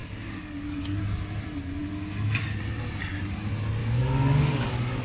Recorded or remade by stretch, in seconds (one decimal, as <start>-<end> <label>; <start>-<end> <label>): 0.0-1.0 remade; 1.0-3.8 recorded; 3.8-5.0 remade